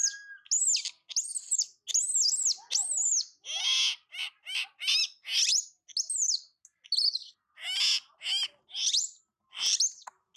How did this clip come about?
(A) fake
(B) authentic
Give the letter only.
B